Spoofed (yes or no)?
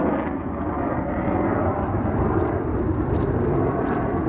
no